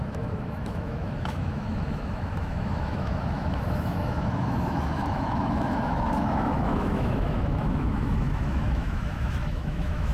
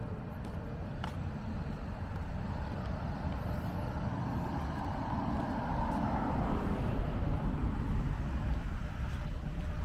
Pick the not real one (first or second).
first